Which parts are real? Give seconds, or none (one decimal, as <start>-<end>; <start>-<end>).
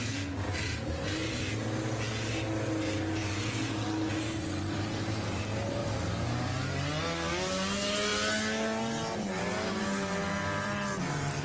0.0-11.4